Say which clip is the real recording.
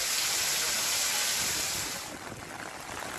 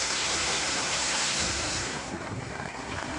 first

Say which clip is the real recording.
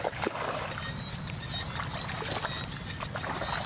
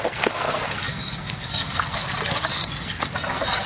first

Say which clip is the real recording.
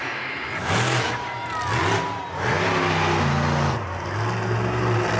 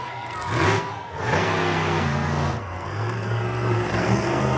first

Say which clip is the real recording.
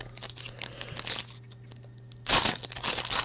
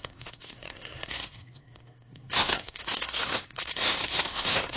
first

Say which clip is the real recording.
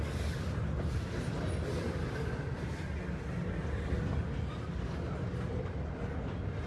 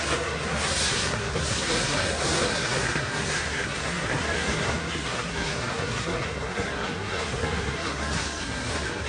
first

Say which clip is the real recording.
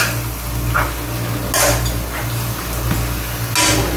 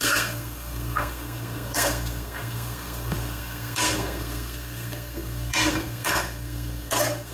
first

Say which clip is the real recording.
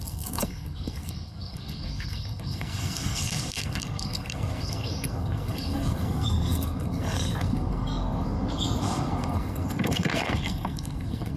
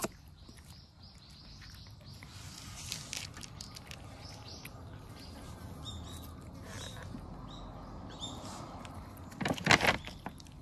second